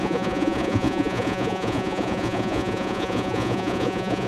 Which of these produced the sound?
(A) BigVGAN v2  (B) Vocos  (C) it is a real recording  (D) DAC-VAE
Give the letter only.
B